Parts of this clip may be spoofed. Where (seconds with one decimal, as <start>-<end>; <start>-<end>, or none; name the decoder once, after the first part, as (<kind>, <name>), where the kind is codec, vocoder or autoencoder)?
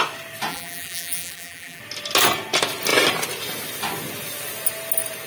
0.5-1.8 (vocoder, BigVGAN v2)